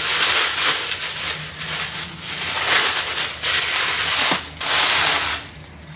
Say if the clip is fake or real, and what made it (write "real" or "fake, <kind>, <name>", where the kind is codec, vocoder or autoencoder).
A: real